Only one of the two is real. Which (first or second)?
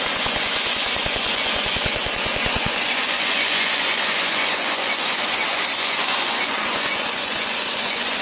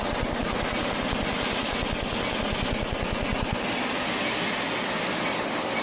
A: second